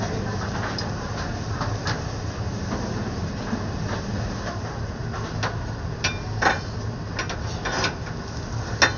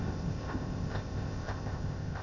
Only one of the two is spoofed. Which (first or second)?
second